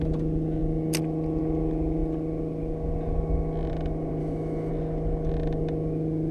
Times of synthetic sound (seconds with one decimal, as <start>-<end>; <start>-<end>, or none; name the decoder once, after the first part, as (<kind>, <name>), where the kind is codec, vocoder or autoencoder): 4.2-4.7 (autoencoder, DAC-VAE)